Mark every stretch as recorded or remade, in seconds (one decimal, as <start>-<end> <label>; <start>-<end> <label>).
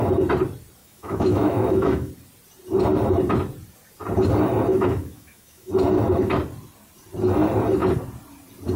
0.0-0.8 recorded; 0.8-2.1 remade; 2.1-4.7 recorded; 4.7-5.7 remade; 5.7-8.8 recorded